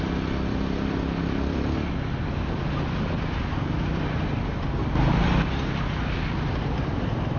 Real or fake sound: real